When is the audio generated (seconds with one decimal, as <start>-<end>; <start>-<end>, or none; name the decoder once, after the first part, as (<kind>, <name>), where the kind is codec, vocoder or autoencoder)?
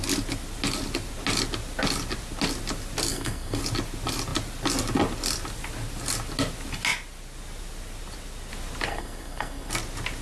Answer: 3.1-3.6 (codec, SNAC); 8.9-9.7